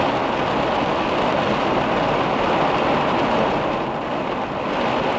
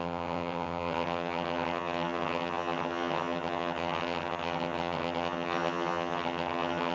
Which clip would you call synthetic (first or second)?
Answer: second